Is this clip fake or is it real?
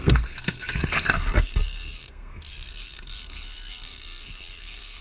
fake